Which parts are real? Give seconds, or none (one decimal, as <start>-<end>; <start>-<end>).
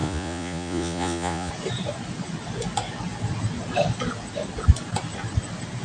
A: 1.5-5.8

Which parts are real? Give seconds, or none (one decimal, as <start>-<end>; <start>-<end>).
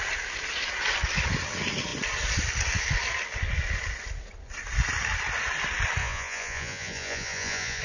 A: 0.0-6.0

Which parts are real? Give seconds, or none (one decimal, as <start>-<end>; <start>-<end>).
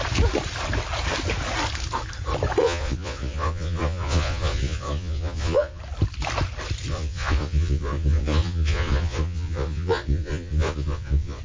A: 0.0-2.6; 5.8-6.9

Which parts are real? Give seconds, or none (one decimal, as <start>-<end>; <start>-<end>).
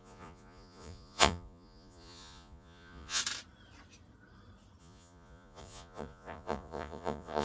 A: 3.2-4.8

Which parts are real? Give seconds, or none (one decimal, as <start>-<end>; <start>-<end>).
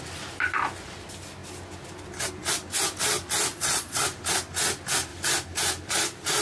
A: 0.0-3.5; 4.0-6.4